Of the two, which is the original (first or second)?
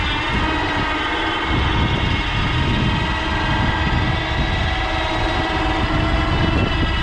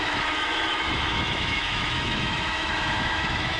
first